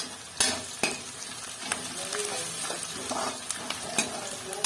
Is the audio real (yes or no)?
yes